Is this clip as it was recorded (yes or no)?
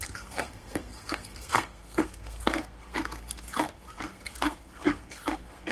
no